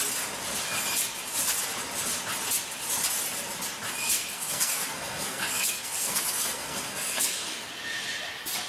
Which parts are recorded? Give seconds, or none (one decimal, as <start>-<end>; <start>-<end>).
0.0-4.0; 7.7-8.7